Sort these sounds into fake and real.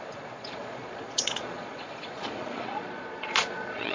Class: fake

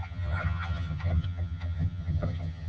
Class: fake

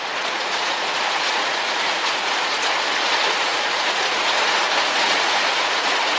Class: fake